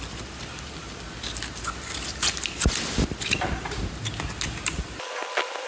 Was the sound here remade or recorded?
recorded